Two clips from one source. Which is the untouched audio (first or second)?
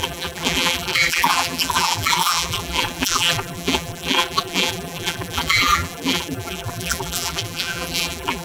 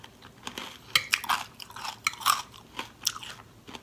second